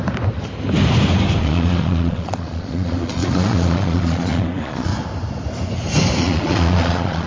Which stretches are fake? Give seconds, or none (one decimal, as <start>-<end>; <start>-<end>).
1.4-4.9; 6.2-7.3